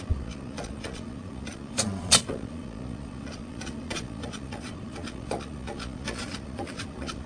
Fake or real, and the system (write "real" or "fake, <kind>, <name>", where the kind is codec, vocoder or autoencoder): fake, vocoder, Vocos